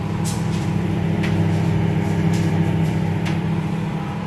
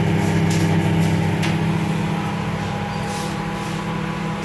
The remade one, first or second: first